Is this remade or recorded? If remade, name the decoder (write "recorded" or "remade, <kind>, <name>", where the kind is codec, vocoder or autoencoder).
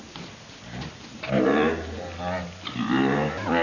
recorded